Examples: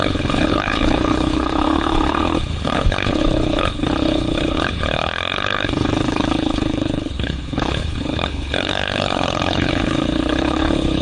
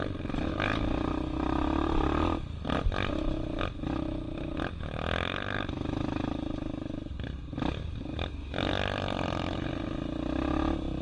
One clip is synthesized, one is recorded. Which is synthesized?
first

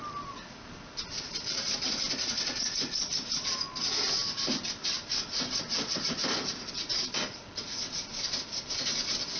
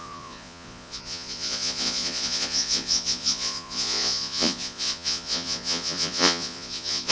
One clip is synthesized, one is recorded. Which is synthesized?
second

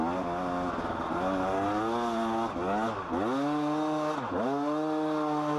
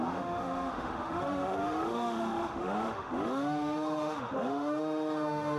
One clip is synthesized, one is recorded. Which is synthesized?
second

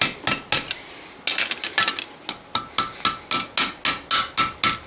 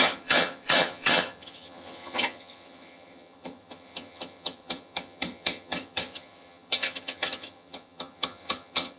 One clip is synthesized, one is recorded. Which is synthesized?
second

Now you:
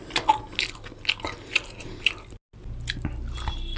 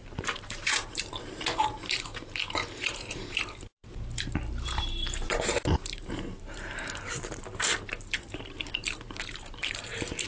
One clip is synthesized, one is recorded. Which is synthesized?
second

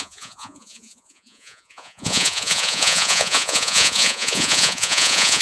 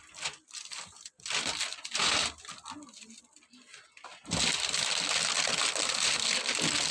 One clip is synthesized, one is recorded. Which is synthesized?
first